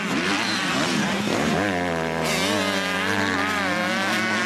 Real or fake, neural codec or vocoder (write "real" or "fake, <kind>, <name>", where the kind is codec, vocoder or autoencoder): real